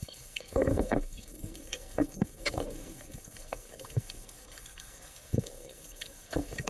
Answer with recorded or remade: remade